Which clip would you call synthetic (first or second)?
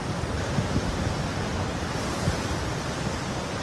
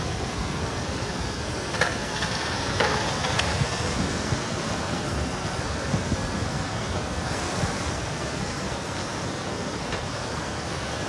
second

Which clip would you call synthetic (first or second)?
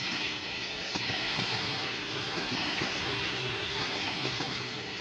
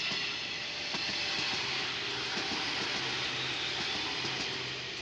first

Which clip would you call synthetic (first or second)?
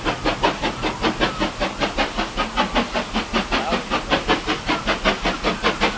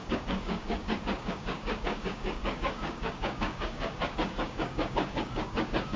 second